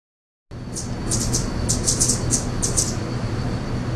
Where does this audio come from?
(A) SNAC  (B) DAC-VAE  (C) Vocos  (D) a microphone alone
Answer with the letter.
D